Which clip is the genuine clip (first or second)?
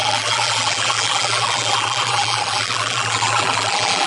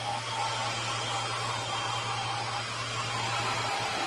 second